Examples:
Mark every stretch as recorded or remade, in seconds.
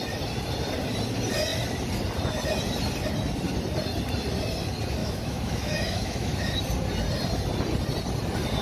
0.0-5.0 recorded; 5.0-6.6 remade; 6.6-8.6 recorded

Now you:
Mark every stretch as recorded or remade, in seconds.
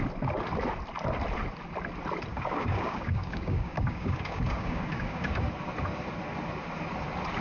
0.0-2.3 recorded; 2.3-5.5 remade; 5.5-7.4 recorded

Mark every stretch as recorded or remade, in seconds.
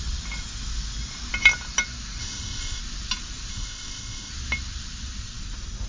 0.0-2.2 recorded; 2.2-2.8 remade; 2.8-3.5 recorded; 3.5-4.3 remade; 4.3-5.9 recorded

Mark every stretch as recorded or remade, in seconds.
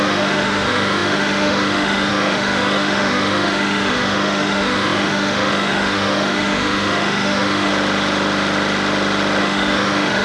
0.0-7.7 remade; 7.7-9.4 recorded; 9.4-10.2 remade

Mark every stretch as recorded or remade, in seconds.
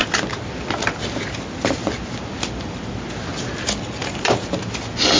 0.0-4.0 recorded; 4.0-4.5 remade; 4.5-5.2 recorded